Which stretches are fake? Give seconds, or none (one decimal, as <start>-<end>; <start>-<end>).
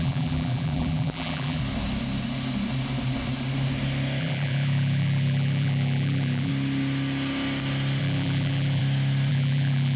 0.0-1.6; 4.2-6.5; 8.0-8.8; 9.3-10.0